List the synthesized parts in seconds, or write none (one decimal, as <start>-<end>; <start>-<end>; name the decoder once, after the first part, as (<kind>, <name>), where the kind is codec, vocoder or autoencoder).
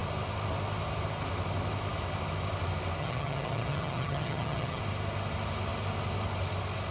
3.0-4.8 (vocoder, HiFi-GAN)